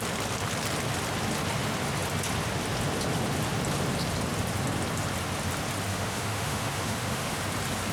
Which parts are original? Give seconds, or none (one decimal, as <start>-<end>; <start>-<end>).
0.0-5.9; 7.4-7.9